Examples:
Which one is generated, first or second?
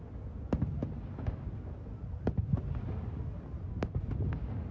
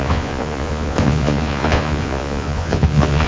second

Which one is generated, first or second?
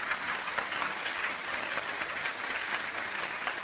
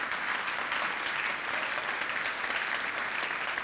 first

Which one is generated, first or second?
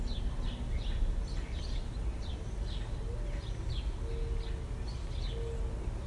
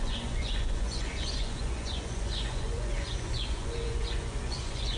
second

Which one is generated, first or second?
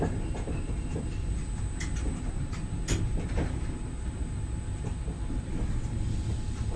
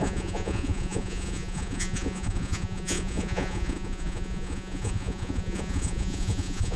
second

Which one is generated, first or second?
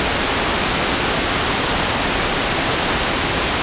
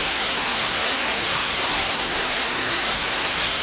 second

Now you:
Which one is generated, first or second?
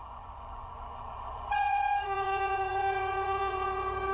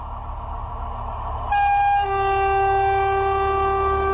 first